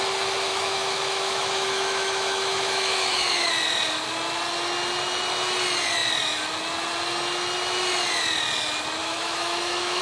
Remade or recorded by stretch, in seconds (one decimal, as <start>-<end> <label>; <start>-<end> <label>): 0.0-0.5 recorded; 0.5-3.5 remade; 3.5-9.0 recorded; 9.0-10.0 remade